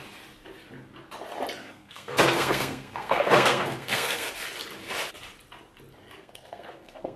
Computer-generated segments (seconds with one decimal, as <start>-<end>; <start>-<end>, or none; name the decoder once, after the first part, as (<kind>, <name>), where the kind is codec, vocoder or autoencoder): 1.6-4.3 (codec, SNAC); 6.2-7.2